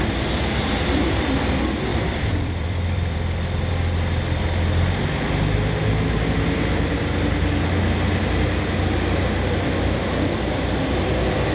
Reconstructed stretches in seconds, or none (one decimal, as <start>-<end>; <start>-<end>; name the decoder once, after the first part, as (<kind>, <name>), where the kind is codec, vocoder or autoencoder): 1.9-3.7 (vocoder, BigVGAN v2)